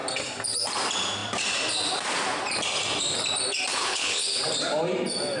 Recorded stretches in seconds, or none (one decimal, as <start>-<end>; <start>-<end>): 0.0-3.7; 4.4-5.4